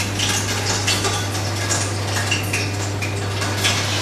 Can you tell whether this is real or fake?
real